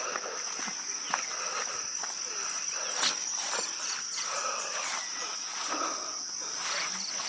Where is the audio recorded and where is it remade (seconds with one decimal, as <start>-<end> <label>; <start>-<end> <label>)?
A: 0.0-7.3 recorded